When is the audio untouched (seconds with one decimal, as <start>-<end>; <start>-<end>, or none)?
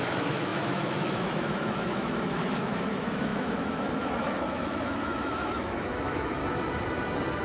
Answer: 6.4-7.4